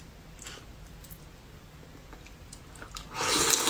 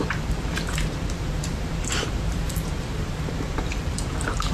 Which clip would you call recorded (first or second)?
first